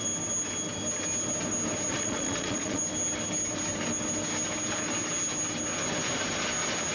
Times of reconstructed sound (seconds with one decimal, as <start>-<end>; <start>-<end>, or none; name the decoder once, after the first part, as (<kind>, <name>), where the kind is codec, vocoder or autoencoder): 1.9-2.8 (vocoder, Vocos)